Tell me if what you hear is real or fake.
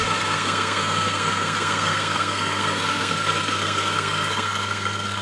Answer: fake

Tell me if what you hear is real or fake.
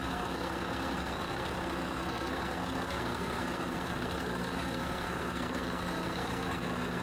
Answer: fake